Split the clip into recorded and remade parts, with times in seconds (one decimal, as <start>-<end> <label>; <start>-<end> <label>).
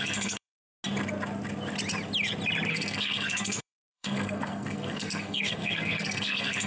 0.0-0.6 remade; 0.6-2.7 recorded; 2.7-6.7 remade